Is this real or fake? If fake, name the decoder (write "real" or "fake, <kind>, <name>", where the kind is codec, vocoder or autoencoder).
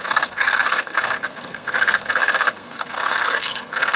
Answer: fake, codec, SNAC